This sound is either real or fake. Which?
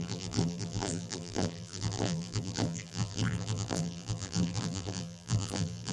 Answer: fake